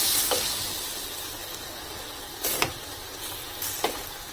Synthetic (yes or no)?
no